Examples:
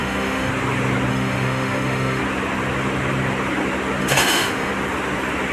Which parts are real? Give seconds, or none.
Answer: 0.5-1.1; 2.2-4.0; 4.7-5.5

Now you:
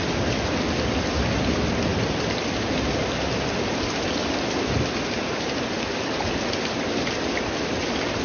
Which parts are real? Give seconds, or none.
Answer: 0.0-8.2

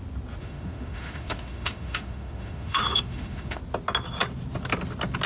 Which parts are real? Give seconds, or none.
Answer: 0.0-0.4; 3.6-5.3

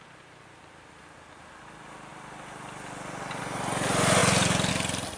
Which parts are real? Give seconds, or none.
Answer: 0.0-5.2

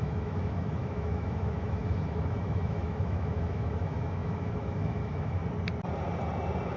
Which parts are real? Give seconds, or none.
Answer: 5.4-6.8

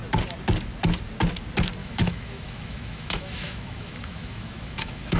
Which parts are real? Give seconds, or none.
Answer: 0.0-1.8

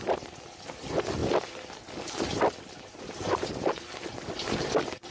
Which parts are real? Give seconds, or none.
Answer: 0.0-5.1